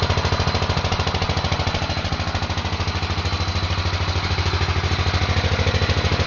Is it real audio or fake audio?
real